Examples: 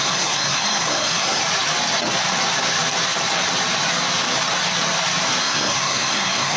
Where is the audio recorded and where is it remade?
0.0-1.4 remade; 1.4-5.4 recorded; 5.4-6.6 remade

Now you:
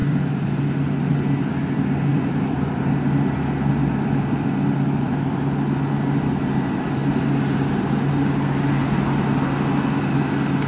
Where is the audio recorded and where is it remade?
0.0-0.6 remade; 0.6-2.1 recorded; 2.1-2.8 remade; 2.8-10.7 recorded

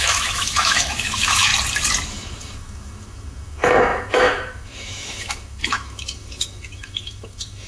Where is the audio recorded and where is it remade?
0.0-1.5 remade; 1.5-2.1 recorded; 2.1-7.7 remade

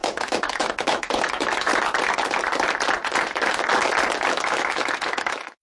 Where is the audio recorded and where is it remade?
0.0-1.7 remade; 1.7-4.3 recorded; 4.3-5.6 remade

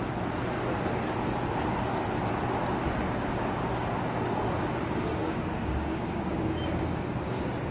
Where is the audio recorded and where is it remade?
0.0-3.0 recorded; 3.0-4.8 remade; 4.8-5.2 recorded; 5.2-6.3 remade; 6.3-7.7 recorded

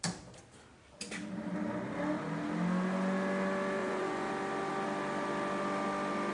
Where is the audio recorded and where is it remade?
0.0-3.8 recorded; 3.8-4.3 remade; 4.3-6.3 recorded

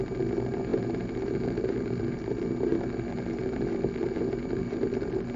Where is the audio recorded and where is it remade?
0.0-5.4 recorded

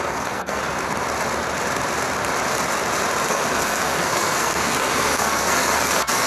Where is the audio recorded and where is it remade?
0.0-0.6 remade; 0.6-3.3 recorded; 3.3-6.3 remade